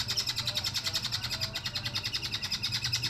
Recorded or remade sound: recorded